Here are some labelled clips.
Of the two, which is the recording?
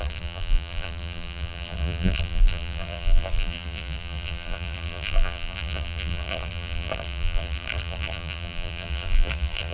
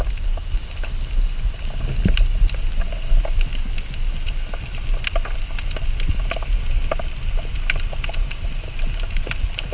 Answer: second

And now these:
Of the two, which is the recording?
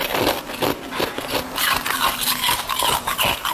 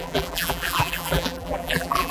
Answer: first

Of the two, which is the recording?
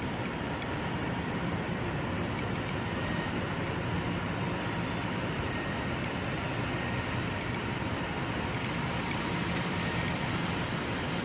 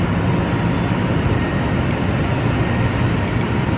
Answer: second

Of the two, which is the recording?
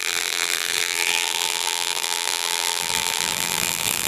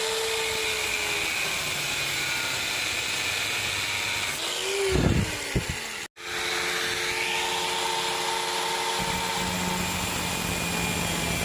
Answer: second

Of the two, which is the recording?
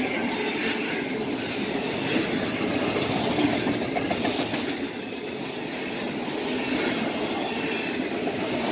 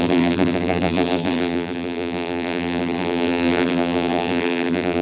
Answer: first